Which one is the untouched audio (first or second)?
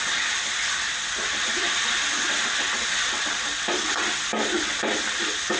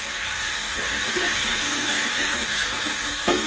first